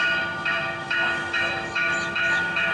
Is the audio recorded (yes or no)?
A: no